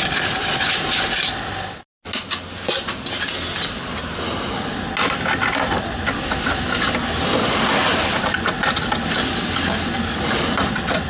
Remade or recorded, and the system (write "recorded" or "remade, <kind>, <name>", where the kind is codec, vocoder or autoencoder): recorded